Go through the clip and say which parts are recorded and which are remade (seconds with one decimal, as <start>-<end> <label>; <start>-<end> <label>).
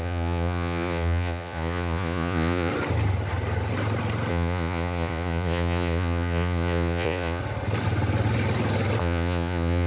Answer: 0.0-2.7 remade; 2.7-4.3 recorded; 4.3-7.4 remade; 7.4-9.0 recorded; 9.0-9.9 remade